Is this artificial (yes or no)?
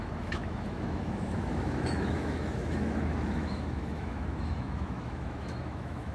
yes